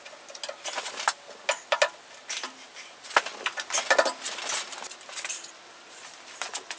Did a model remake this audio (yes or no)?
no